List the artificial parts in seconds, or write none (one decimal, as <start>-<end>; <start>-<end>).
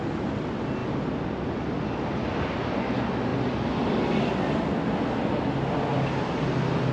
none